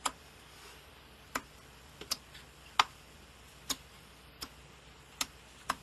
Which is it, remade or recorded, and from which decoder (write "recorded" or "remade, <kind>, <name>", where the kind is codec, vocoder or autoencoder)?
recorded